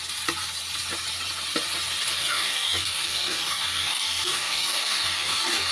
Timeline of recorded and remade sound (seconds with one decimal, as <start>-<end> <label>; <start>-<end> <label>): 0.0-2.2 recorded; 2.2-5.7 remade